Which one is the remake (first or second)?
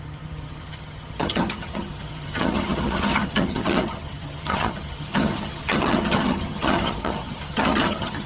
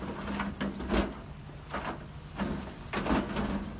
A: first